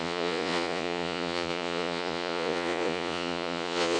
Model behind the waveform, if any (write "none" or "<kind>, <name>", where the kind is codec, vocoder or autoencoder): vocoder, Vocos